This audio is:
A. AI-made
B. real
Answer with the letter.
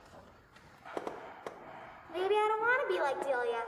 B